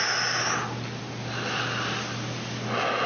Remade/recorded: recorded